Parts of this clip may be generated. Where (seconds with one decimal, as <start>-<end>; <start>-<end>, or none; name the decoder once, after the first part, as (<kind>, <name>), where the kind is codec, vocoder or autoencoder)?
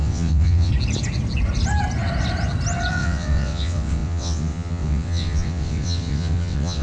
0.0-0.7 (vocoder, WaveNeXt); 2.9-6.8